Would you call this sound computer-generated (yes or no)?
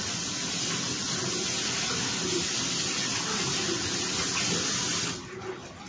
no